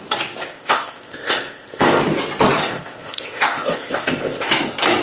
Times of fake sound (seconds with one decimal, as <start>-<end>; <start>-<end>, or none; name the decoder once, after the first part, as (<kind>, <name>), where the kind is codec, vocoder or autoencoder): 0.5-2.0 (codec, ZipCodec); 2.6-4.5